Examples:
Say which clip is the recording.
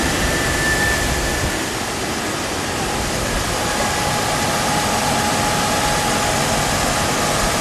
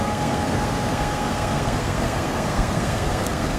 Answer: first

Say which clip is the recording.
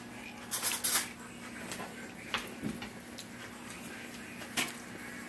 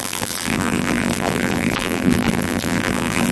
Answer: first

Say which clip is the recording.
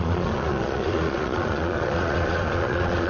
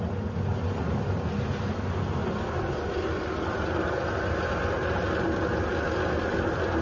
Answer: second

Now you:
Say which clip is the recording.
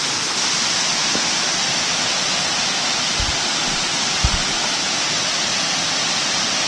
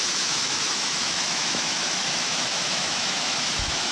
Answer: first